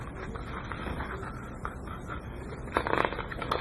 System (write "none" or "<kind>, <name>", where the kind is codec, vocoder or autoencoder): none